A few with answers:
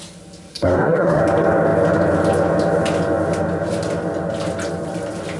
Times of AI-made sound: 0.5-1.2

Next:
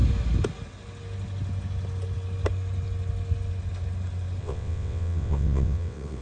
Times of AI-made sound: 4.4-6.2

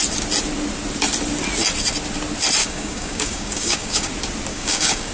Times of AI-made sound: 2.6-4.1; 4.5-5.1

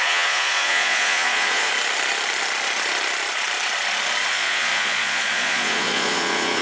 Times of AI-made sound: 0.0-1.7; 4.3-6.6

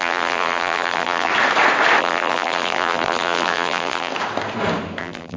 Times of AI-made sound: 0.0-1.3; 2.0-4.1; 5.0-5.4